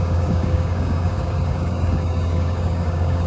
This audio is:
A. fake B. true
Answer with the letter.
A